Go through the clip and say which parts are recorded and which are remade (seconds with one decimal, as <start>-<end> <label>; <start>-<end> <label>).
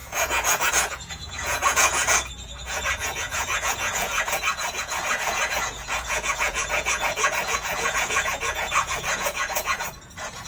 0.0-10.5 remade